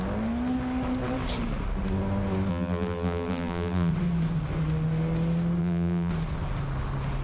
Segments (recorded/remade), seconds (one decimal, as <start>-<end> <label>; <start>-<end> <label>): 0.0-2.5 recorded; 2.5-3.9 remade; 3.9-5.6 recorded; 5.6-6.1 remade; 6.1-7.2 recorded